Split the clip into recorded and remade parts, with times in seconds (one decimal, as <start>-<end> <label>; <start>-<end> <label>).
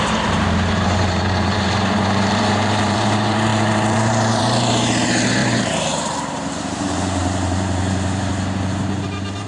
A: 0.0-7.2 remade; 7.2-8.3 recorded; 8.3-9.5 remade